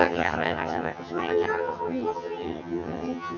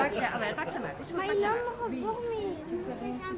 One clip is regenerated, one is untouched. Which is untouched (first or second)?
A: second